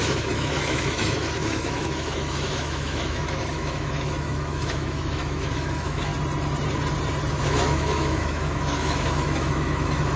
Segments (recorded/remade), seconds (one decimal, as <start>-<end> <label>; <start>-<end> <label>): 0.0-6.1 remade; 6.1-7.3 recorded; 7.3-10.2 remade